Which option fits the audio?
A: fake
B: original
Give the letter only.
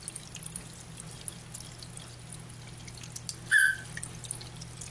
B